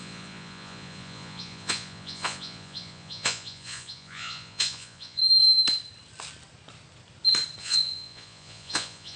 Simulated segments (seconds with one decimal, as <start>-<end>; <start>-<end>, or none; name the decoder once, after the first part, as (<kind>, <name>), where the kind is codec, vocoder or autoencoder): 0.0-5.2 (vocoder, Vocos); 7.6-9.2